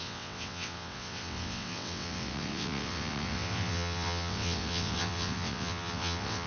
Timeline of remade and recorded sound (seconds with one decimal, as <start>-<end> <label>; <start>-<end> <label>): 0.0-6.5 remade